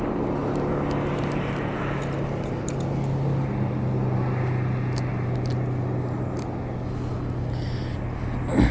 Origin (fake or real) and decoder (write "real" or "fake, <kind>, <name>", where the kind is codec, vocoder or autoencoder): real